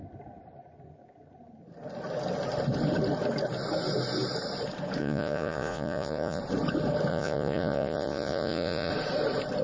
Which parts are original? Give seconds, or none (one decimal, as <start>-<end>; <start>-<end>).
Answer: 0.0-5.0; 6.4-7.1; 8.9-9.6